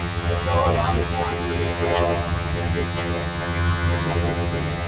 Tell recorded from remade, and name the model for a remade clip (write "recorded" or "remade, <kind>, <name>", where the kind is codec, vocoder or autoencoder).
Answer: remade, vocoder, HiFi-GAN